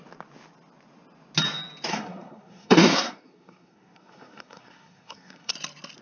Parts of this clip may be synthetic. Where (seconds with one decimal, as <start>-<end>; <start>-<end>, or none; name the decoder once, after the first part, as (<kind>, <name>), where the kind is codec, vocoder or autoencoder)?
1.9-5.5 (codec, SNAC)